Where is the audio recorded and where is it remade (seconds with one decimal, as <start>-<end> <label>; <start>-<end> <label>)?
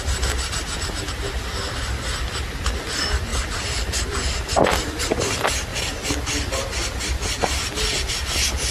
0.0-3.3 recorded; 3.3-5.3 remade; 5.3-8.7 recorded